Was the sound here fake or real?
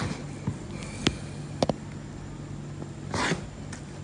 real